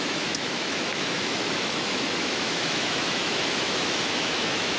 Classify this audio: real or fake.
fake